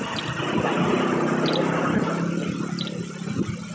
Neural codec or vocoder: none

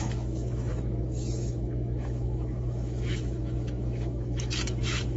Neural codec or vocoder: autoencoder, DAC-VAE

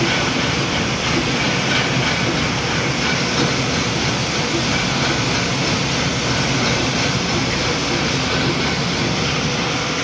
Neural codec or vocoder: none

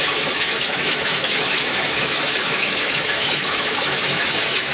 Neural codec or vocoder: autoencoder, DAC-VAE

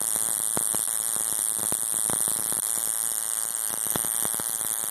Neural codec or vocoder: none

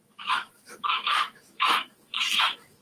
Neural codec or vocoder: autoencoder, DAC-VAE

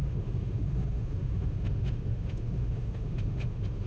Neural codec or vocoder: autoencoder, DAC-VAE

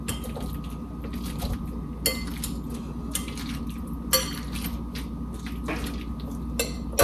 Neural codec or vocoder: none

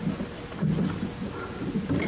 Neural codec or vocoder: none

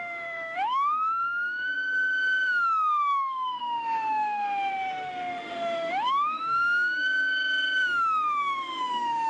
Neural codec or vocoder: autoencoder, DAC-VAE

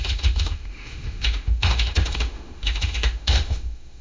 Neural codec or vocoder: autoencoder, DAC-VAE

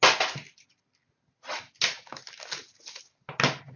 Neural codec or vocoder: none